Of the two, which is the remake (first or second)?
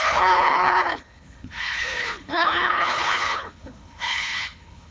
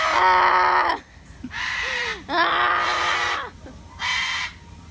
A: first